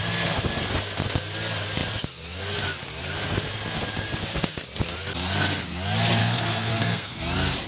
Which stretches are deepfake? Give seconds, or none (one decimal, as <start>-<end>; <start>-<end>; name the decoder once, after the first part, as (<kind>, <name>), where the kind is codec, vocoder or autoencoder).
6.2-7.2 (codec, SNAC)